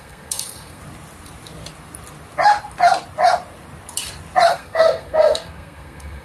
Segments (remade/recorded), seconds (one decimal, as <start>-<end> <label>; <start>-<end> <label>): 0.0-0.8 remade; 0.8-4.5 recorded; 4.5-6.2 remade